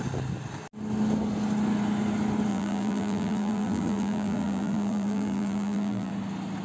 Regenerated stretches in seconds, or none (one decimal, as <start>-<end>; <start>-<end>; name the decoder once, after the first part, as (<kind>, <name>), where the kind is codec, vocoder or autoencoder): 2.5-6.1 (vocoder, BigVGAN v2)